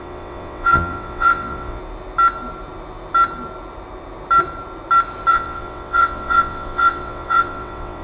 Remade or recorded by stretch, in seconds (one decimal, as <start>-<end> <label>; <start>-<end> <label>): 0.0-1.8 remade; 1.8-5.3 recorded; 5.3-8.0 remade